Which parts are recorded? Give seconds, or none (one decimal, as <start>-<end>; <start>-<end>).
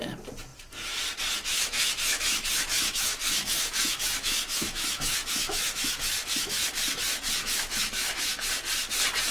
0.0-1.5; 6.7-7.4; 8.3-9.3